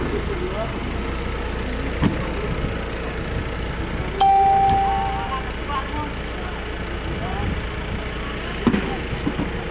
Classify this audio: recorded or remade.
recorded